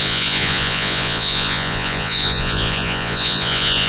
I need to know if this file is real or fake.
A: fake